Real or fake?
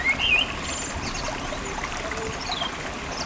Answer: real